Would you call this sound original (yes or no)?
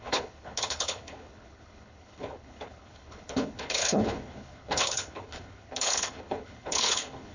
no